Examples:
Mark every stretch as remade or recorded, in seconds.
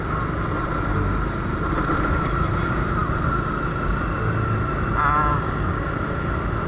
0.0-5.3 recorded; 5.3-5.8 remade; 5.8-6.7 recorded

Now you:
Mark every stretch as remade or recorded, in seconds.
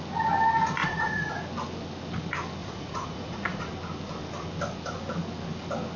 0.0-0.8 recorded; 0.8-1.4 remade; 1.4-2.6 recorded; 2.6-3.7 remade; 3.7-6.0 recorded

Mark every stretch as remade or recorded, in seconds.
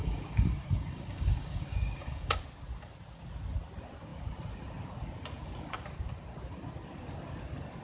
0.0-2.4 remade; 2.4-7.8 recorded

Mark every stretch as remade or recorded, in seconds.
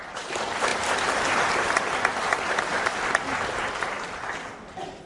0.0-5.1 recorded